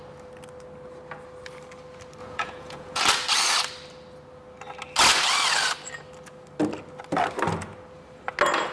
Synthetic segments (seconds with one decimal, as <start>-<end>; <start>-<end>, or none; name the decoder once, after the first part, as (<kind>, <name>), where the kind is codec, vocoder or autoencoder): 2.2-3.0 (vocoder, Vocos)